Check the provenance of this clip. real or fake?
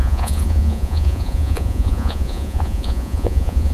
fake